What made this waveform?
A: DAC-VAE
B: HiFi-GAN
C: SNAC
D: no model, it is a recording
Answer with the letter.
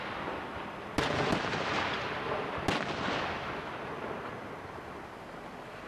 D